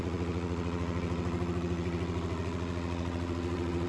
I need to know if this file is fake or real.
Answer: fake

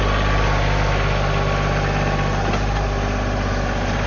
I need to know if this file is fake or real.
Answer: real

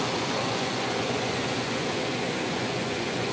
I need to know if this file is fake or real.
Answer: fake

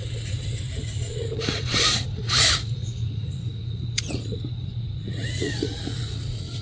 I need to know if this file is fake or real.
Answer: fake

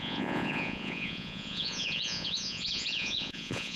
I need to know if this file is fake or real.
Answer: fake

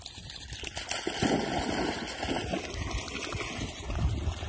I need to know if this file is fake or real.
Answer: real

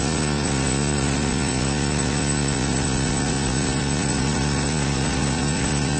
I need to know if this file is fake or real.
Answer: fake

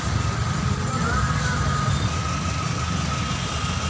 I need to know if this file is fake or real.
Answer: real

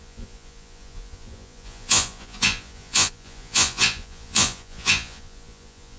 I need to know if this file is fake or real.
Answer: fake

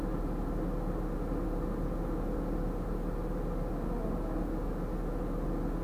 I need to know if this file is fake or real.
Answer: real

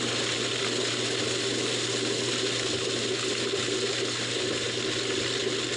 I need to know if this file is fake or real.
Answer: real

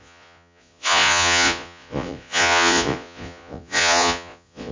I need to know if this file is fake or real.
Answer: fake